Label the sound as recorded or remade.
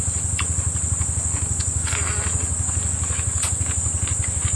recorded